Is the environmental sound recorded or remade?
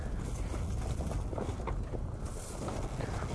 recorded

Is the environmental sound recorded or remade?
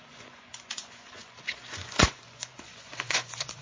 remade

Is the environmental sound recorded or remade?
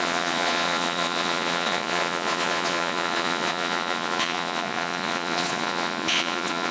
remade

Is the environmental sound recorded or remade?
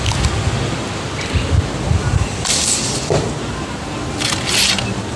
recorded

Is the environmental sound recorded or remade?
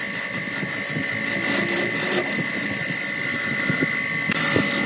recorded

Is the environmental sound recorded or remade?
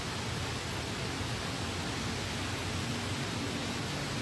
recorded